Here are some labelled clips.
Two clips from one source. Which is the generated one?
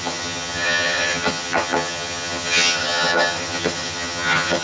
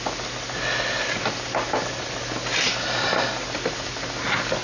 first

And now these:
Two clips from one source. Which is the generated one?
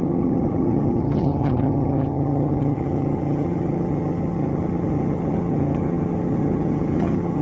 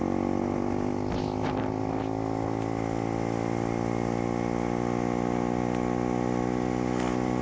first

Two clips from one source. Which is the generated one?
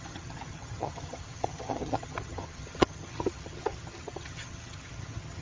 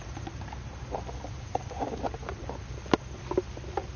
first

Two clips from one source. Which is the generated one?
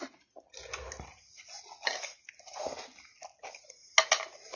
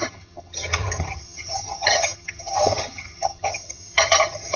second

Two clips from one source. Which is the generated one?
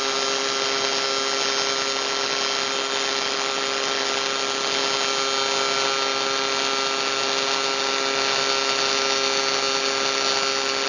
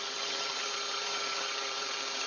second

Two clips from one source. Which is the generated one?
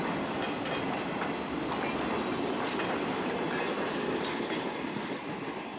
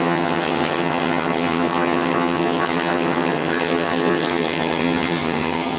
second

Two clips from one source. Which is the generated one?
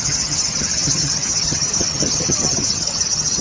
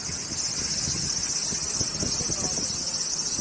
first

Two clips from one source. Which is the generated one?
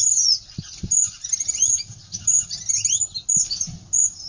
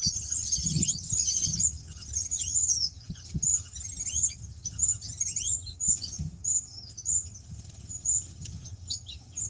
second